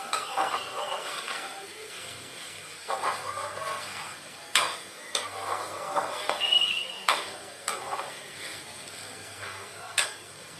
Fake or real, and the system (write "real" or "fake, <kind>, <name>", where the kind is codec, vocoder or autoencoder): fake, codec, SNAC